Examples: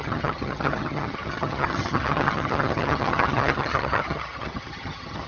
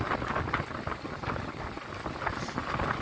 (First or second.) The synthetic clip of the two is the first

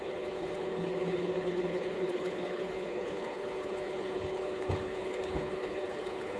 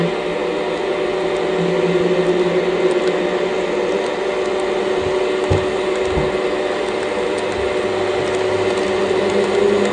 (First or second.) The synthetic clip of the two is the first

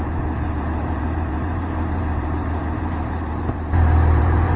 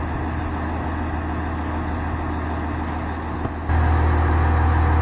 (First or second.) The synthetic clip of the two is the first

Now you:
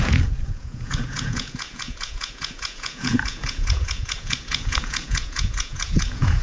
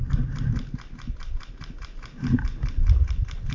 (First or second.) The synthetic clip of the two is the first